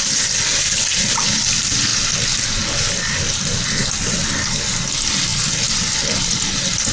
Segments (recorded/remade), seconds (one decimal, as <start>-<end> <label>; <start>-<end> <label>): 0.0-6.9 recorded